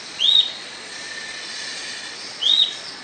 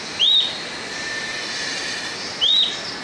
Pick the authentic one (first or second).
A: second